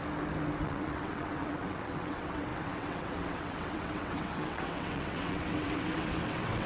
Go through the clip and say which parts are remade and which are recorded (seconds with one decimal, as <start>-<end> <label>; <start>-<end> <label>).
0.0-0.6 recorded; 0.6-6.7 remade

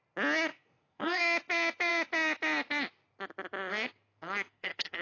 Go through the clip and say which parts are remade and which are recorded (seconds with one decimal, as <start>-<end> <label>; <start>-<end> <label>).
0.0-0.5 recorded; 0.5-1.2 remade; 1.2-3.7 recorded; 3.7-5.0 remade

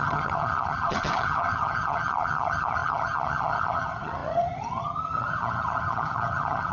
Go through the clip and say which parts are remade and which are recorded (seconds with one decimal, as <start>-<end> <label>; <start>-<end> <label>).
0.0-6.7 remade